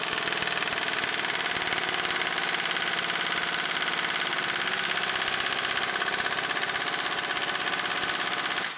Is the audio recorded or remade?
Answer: recorded